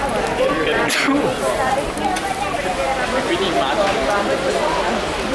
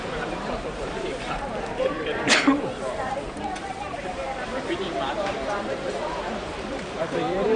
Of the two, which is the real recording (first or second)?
first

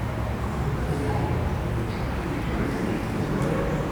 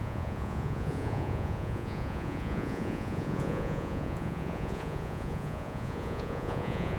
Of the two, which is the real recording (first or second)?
first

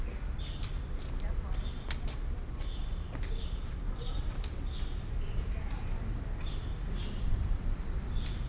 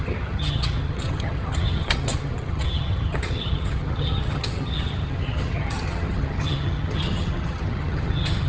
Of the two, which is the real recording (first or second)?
first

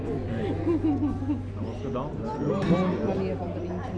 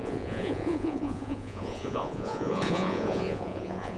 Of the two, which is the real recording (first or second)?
first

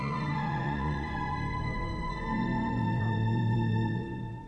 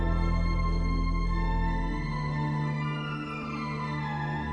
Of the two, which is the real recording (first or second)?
second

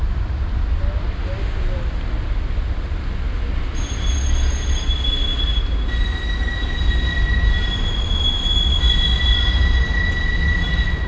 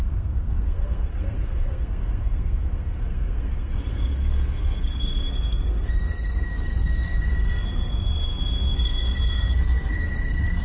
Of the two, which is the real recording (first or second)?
first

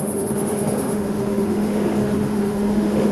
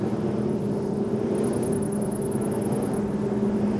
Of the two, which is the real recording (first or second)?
second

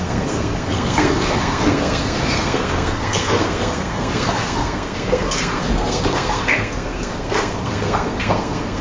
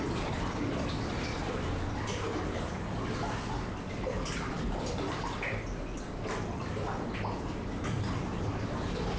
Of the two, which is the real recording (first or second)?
second